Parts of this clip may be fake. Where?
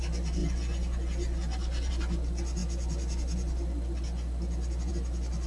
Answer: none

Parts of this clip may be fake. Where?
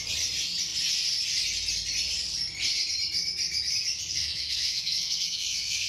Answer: 4.1-5.9 (codec, SNAC)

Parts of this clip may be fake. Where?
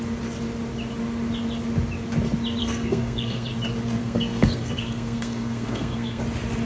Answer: 2.6-3.5 (codec, SNAC); 4.0-6.2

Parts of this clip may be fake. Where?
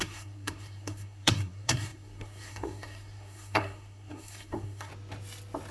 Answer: 0.0-4.9 (codec, SNAC)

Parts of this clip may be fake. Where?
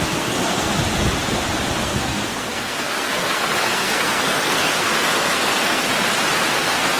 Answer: 0.0-0.7 (codec, SNAC); 1.8-5.9; 6.5-7.0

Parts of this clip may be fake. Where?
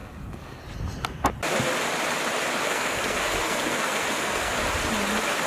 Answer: 0.0-0.6 (codec, SNAC); 2.6-4.6